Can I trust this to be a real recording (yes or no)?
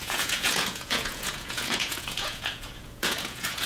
no